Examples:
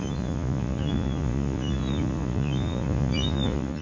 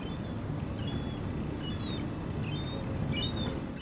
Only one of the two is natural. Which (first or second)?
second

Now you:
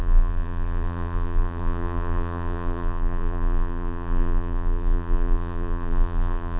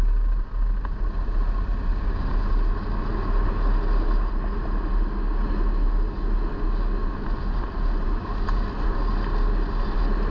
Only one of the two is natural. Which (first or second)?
second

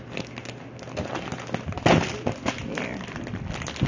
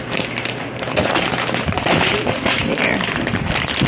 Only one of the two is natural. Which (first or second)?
first